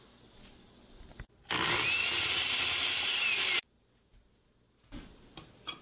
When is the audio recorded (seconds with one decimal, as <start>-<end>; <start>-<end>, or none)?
0.0-5.8